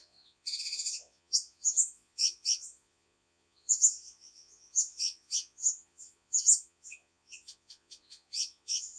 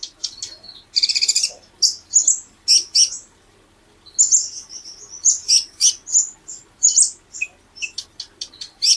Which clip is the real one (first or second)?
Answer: second